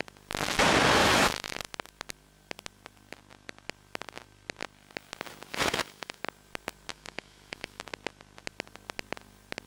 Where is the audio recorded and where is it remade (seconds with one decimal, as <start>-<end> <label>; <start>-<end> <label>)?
0.0-1.0 recorded; 1.0-1.6 remade; 1.6-5.5 recorded; 5.5-6.2 remade; 6.2-6.9 recorded; 6.9-7.8 remade; 7.8-9.7 recorded